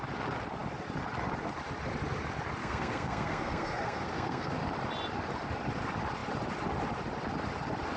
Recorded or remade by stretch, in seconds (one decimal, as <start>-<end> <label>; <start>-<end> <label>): 0.0-2.6 recorded; 2.6-4.6 remade; 4.6-8.0 recorded